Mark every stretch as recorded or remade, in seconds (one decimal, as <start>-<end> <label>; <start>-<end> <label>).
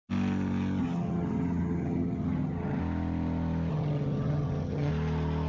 0.0-0.8 recorded; 0.8-2.8 remade; 2.8-3.7 recorded; 3.7-4.9 remade; 4.9-5.5 recorded